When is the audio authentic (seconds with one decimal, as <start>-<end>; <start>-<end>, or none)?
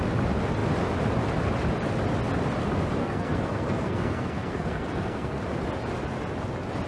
0.0-3.0; 5.4-6.9